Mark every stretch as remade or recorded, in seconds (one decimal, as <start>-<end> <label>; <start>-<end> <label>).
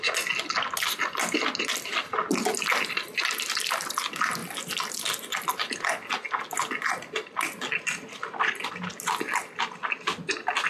0.0-10.7 recorded